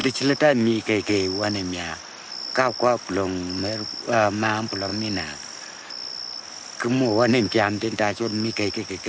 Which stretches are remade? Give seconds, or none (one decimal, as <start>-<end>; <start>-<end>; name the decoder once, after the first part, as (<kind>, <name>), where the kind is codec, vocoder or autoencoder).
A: 0.0-1.1 (codec, DAC); 7.3-8.7